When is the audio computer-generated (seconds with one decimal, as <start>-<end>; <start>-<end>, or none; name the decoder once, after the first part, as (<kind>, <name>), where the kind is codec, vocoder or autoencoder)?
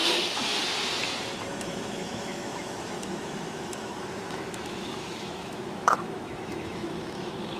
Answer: 1.6-7.6 (autoencoder, DAC-VAE)